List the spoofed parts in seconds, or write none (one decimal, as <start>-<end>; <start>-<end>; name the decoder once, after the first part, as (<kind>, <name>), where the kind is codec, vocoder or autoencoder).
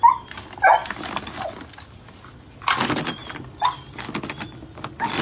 none